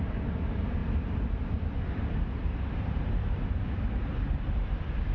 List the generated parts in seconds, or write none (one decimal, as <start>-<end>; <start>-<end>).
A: none

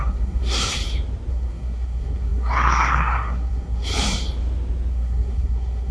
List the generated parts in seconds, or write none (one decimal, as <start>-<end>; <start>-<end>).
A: 0.0-0.8; 1.3-3.9; 4.9-5.9